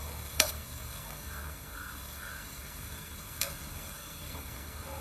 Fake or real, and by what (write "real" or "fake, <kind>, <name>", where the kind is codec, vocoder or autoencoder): fake, codec, SNAC